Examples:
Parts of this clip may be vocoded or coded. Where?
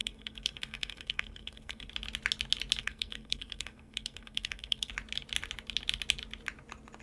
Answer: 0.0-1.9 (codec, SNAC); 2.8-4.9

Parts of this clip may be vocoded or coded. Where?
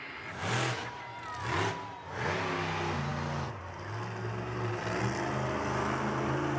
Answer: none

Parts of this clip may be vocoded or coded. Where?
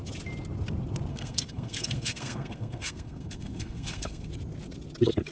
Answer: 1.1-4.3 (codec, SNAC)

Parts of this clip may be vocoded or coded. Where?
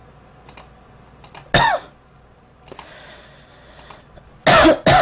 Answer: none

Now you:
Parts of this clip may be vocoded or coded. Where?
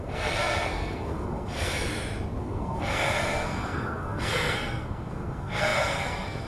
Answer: 0.0-1.9 (codec, SNAC); 2.4-6.5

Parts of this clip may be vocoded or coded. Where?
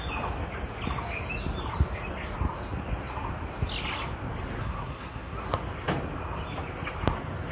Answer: 4.6-5.4 (codec, SNAC)